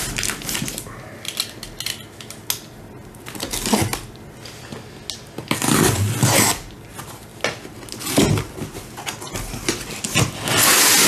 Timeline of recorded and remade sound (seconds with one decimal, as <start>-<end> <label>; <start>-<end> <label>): 0.0-11.1 recorded